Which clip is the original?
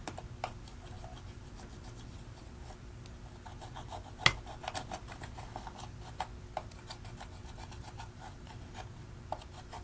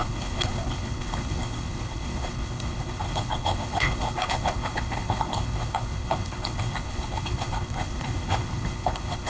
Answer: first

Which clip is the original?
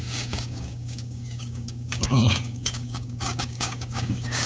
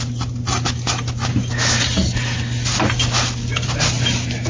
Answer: second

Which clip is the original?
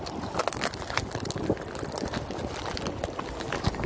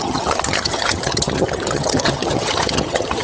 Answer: first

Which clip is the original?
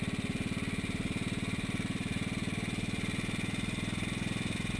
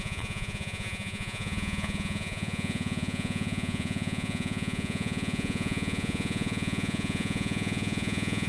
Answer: first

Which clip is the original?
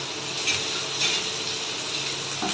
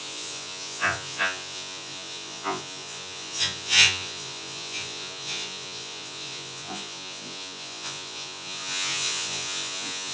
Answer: first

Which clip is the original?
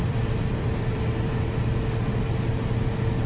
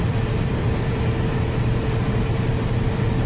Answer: first